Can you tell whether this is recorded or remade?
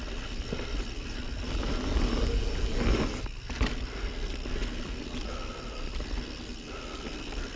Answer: recorded